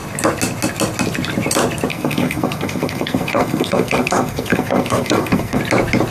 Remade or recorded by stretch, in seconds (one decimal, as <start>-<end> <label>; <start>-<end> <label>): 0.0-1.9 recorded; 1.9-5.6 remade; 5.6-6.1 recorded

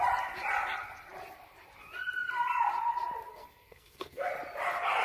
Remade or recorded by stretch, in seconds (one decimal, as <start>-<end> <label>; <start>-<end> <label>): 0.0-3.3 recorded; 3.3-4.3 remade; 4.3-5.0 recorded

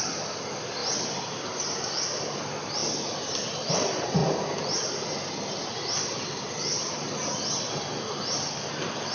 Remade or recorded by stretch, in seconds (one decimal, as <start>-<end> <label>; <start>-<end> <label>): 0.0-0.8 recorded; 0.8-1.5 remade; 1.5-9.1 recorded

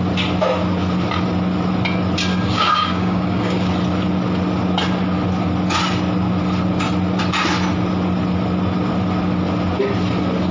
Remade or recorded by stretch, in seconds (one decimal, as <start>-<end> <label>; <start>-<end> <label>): 0.0-2.3 recorded; 2.3-3.7 remade; 3.7-10.5 recorded

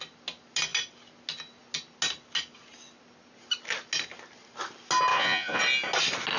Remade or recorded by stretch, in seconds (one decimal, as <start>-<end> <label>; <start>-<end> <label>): 0.0-5.1 recorded; 5.1-5.6 remade; 5.6-6.4 recorded

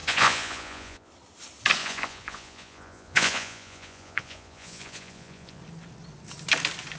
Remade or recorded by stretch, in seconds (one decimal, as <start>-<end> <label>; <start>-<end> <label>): 0.0-1.1 remade; 1.1-1.8 recorded; 1.8-5.6 remade; 5.6-7.0 recorded

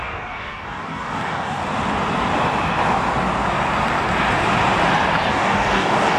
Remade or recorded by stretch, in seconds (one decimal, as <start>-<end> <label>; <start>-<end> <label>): 0.0-1.6 remade; 1.6-5.3 recorded; 5.3-6.2 remade